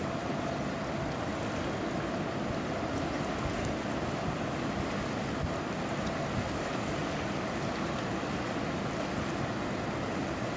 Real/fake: real